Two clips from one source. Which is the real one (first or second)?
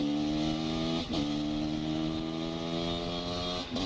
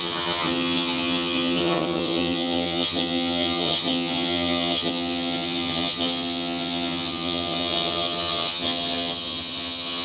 first